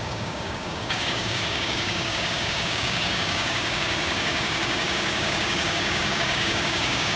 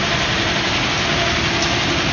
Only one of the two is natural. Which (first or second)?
second